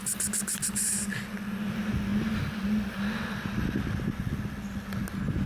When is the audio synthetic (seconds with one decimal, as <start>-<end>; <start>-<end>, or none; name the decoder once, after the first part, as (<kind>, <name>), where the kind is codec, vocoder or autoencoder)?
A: none